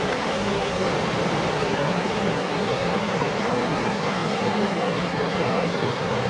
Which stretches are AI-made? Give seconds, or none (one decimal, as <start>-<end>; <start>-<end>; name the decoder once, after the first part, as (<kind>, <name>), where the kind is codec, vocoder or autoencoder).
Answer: 0.0-0.9 (codec, SNAC); 1.5-6.3